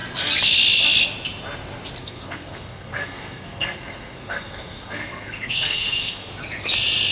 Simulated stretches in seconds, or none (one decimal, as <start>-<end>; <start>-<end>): 2.0-6.3